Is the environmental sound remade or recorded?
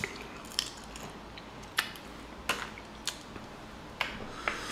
recorded